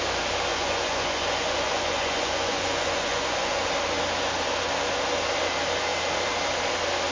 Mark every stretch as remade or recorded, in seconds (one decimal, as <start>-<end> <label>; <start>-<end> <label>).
0.0-0.5 recorded; 0.5-3.7 remade; 3.7-7.1 recorded